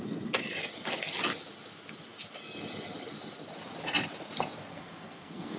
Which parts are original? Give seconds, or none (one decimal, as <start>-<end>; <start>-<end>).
0.0-4.7

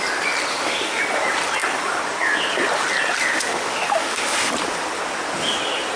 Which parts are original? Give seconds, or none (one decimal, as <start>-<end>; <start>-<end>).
0.0-0.5; 1.0-3.2; 4.5-6.0